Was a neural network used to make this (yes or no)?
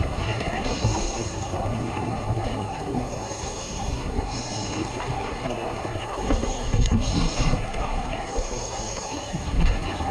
yes